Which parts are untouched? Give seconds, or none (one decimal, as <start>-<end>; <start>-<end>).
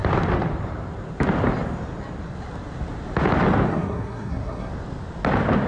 0.0-3.7; 4.7-5.7